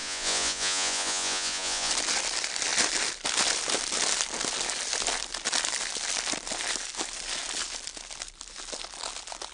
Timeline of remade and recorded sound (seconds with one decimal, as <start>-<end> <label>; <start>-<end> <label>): 0.0-1.9 remade; 1.9-9.5 recorded